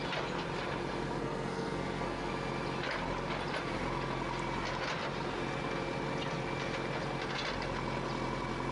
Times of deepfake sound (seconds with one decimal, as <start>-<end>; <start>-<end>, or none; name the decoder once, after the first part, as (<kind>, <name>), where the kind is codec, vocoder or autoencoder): 1.2-2.3 (codec, SNAC)